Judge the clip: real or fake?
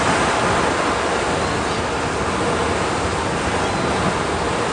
real